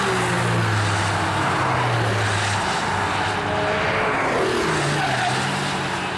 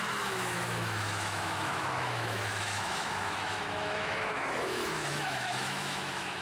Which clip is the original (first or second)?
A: first